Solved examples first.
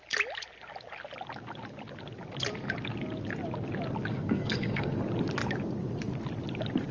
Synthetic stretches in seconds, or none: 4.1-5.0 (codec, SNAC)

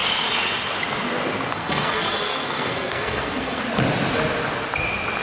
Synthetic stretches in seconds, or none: 1.5-3.6 (codec, SNAC)